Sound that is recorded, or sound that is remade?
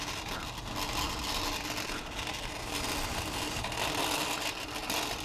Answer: recorded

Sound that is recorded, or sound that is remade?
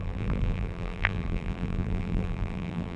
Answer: remade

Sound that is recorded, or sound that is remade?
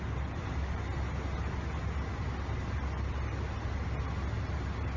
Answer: recorded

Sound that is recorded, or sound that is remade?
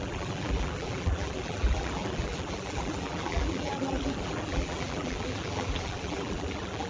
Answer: remade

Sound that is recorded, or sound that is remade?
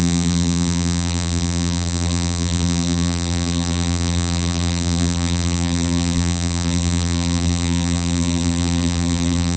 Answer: remade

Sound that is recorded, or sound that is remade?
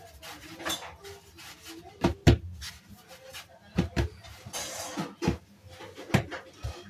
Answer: recorded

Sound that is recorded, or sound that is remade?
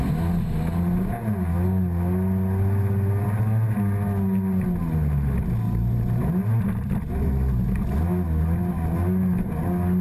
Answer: recorded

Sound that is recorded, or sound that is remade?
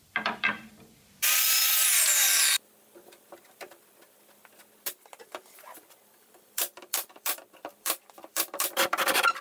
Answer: remade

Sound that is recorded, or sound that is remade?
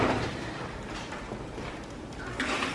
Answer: remade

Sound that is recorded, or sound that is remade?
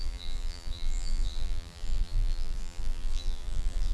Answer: remade